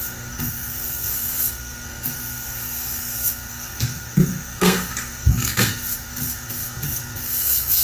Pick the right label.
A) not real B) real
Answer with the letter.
A